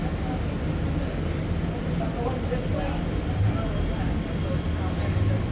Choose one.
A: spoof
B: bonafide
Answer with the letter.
B